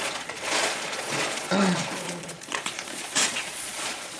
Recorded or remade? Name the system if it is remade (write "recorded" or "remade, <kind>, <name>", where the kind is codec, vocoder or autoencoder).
remade, vocoder, Vocos